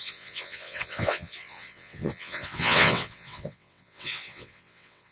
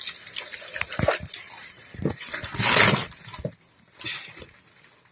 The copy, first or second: first